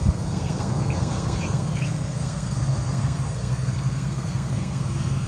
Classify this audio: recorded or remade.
remade